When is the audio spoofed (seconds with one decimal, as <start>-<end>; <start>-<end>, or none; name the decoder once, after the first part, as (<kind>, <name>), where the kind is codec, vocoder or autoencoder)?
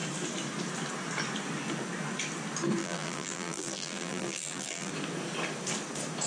2.8-4.9 (vocoder, BigVGAN v2)